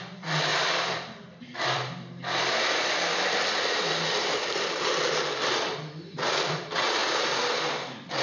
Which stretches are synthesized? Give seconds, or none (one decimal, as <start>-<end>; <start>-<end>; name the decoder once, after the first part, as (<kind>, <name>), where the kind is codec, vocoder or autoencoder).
0.0-7.0 (vocoder, BigVGAN v2)